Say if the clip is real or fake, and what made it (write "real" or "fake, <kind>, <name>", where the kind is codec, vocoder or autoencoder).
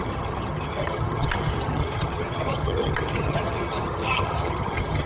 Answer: fake, vocoder, HiFi-GAN